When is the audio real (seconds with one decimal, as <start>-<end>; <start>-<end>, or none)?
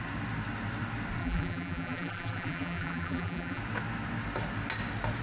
0.0-1.2; 3.6-5.2